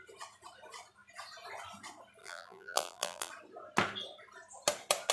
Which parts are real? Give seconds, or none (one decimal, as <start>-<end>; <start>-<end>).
0.0-2.2; 3.3-5.1